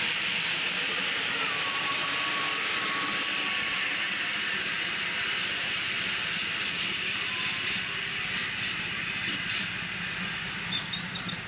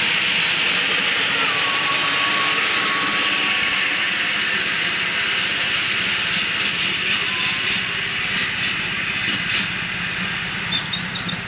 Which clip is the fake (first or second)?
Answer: first